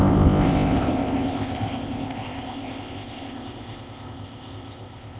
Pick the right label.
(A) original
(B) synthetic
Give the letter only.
B